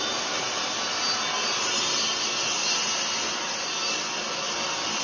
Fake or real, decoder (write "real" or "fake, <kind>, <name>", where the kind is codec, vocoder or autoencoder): real